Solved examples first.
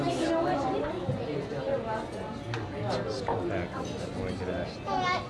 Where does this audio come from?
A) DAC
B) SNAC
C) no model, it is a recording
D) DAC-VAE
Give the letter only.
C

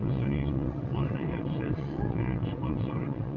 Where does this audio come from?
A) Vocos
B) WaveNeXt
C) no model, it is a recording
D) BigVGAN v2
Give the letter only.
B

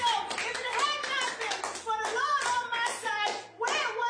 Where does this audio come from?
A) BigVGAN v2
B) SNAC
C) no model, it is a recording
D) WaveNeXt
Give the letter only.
C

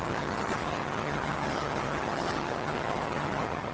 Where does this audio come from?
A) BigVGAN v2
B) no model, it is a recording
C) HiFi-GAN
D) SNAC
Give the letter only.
C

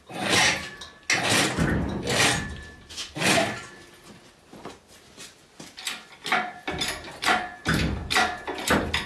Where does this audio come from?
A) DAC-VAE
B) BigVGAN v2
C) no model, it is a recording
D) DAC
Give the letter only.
C